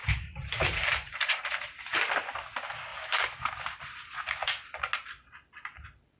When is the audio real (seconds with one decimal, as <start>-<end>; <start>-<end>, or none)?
2.0-2.9; 3.5-6.2